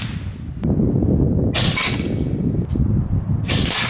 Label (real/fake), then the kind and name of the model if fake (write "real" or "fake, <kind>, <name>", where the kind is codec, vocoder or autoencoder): real